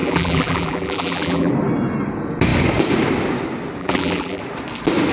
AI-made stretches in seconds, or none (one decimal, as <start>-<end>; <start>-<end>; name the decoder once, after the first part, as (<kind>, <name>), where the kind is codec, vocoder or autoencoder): 0.0-1.5 (vocoder, BigVGAN v2); 3.8-4.4